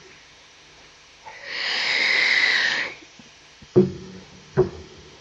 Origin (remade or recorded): remade